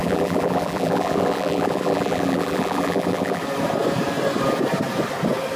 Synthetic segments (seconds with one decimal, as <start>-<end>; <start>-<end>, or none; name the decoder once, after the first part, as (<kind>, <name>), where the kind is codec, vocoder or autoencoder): 0.0-3.4 (vocoder, BigVGAN v2)